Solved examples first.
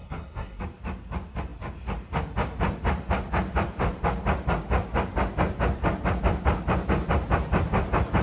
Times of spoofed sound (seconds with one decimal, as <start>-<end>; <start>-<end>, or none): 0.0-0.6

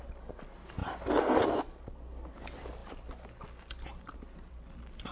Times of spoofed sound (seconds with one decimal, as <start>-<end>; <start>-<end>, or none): none

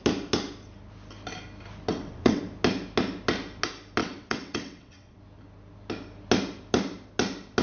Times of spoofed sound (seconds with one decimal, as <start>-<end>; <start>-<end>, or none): 1.9-2.4; 4.0-5.2

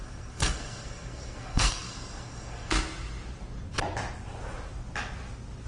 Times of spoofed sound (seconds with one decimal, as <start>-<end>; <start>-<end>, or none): 0.0-2.7

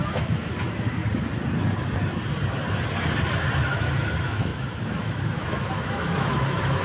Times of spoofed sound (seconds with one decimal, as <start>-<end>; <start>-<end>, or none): 0.0-1.0; 3.6-6.8

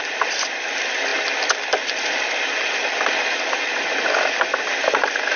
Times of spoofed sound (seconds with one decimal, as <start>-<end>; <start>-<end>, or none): 0.0-1.1; 4.3-5.4